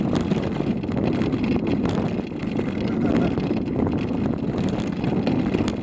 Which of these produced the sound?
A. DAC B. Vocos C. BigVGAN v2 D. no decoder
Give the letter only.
D